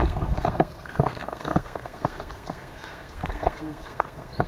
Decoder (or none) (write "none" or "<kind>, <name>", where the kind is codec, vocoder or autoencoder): codec, SNAC